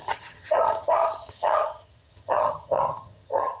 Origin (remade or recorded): remade